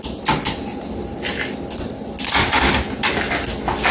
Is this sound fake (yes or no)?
no